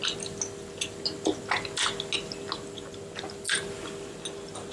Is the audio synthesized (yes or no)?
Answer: no